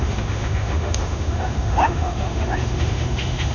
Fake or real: fake